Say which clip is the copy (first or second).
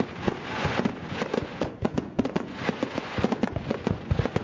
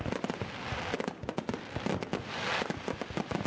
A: first